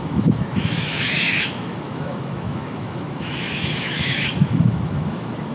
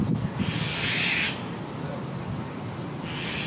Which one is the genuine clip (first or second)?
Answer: second